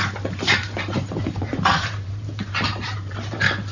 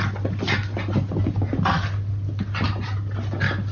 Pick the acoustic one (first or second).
second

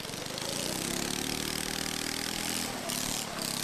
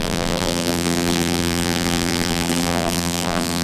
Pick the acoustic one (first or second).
first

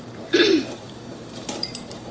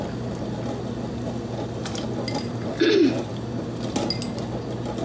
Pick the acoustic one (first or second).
second